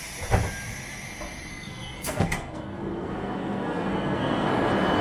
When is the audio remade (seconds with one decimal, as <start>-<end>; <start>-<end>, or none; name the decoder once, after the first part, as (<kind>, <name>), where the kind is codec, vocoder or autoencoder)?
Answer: 1.5-4.5 (codec, SNAC)